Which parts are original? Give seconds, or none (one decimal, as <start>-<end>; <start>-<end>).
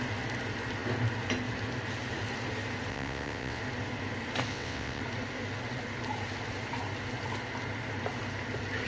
0.0-2.9; 3.6-4.5; 5.0-8.9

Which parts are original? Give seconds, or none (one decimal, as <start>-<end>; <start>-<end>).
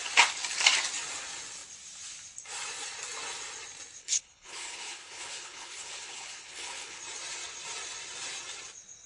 0.0-4.0; 7.0-9.1